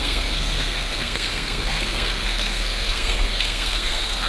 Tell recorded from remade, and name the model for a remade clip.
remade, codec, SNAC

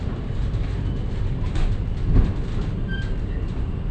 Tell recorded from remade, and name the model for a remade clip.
recorded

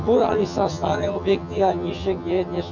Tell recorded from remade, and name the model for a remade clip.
remade, vocoder, HiFi-GAN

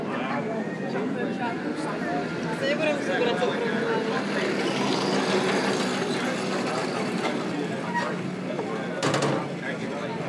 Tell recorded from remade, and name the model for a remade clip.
recorded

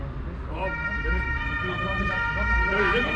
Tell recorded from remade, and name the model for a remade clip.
recorded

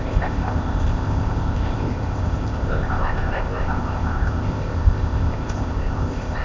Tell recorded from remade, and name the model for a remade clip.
remade, codec, ZipCodec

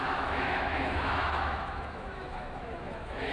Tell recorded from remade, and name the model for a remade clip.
remade, autoencoder, DAC-VAE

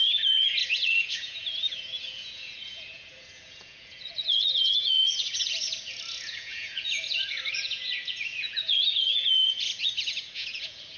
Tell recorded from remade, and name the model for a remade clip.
remade, vocoder, Vocos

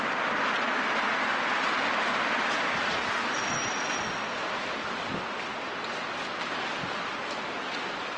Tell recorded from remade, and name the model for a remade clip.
recorded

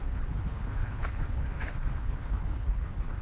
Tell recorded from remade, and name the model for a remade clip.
remade, codec, HILCodec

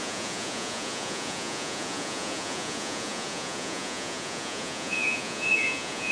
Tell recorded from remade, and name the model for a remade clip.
remade, vocoder, Vocos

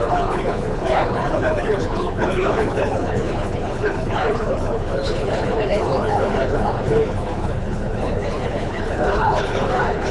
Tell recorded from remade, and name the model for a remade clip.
remade, codec, HILCodec